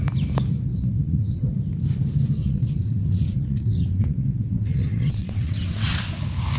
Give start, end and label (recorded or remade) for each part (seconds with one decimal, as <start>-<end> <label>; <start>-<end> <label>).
0.0-0.7 recorded; 0.7-1.5 remade; 1.5-2.4 recorded; 2.4-6.0 remade; 6.0-6.6 recorded